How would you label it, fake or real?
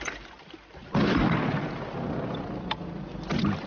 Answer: real